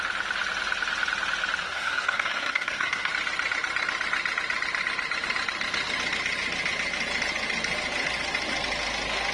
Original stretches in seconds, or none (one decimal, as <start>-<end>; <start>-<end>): 0.0-1.6; 3.1-9.3